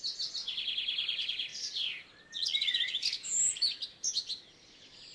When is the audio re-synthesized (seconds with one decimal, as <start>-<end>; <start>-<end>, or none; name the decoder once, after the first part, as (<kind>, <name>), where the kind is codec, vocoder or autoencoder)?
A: none